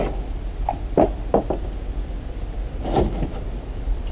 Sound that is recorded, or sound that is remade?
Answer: remade